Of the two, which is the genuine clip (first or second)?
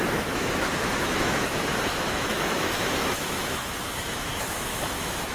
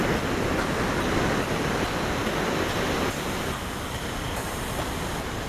second